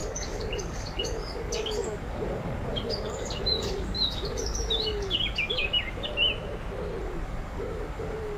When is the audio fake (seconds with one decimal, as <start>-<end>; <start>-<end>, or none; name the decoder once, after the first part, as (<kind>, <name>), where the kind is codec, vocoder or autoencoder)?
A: 0.0-6.1 (codec, DAC); 7.0-8.4